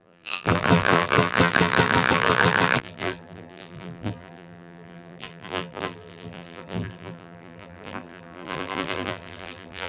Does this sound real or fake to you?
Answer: fake